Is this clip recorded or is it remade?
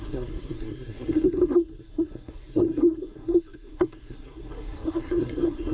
remade